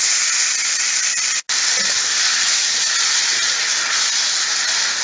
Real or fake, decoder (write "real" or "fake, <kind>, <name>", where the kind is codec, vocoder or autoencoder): real